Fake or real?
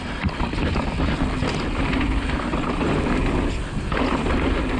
real